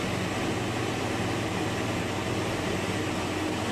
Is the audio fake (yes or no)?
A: no